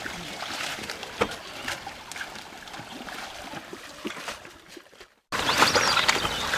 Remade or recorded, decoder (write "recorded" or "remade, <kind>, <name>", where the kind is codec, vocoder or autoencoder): recorded